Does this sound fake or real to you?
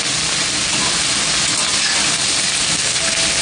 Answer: real